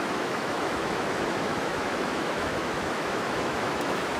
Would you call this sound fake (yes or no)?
yes